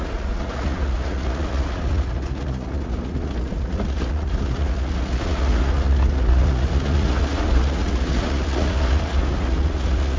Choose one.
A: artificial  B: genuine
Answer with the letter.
A